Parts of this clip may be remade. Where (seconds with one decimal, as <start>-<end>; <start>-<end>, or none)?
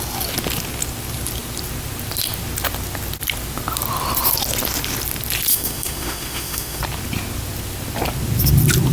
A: 5.5-6.8